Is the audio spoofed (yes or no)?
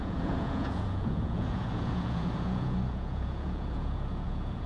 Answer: yes